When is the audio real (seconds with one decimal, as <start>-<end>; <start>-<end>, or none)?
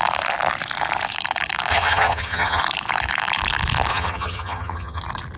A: 0.0-1.7; 2.6-3.9; 5.0-5.4